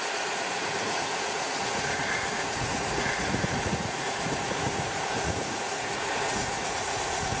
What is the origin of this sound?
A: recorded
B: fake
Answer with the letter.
B